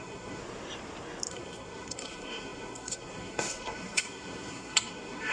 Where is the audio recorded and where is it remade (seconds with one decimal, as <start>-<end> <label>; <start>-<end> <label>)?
0.0-0.4 remade; 0.4-1.3 recorded; 1.3-5.3 remade

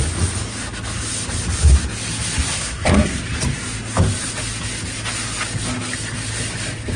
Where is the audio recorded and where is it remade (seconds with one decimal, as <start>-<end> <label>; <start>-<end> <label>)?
0.0-2.5 recorded; 2.5-3.2 remade; 3.2-7.0 recorded

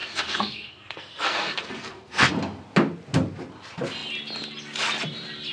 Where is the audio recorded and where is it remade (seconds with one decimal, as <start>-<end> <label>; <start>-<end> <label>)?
0.0-2.3 remade; 2.3-5.5 recorded

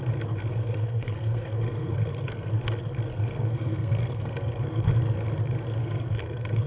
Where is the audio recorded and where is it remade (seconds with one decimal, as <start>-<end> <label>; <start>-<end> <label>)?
0.0-0.5 recorded; 0.5-2.5 remade; 2.5-3.1 recorded; 3.1-4.9 remade; 4.9-5.8 recorded; 5.8-6.7 remade

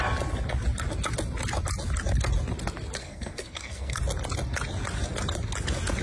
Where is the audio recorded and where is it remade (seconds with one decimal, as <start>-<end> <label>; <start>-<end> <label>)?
0.0-3.0 recorded; 3.0-4.0 remade; 4.0-6.0 recorded

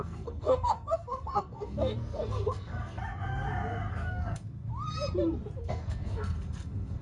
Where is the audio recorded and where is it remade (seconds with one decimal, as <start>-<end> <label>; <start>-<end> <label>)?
0.0-3.0 remade; 3.0-3.9 recorded; 3.9-4.7 remade; 4.7-5.6 recorded; 5.6-7.0 remade